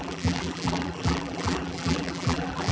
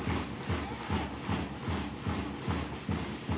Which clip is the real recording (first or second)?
second